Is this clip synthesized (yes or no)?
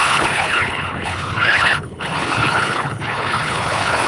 yes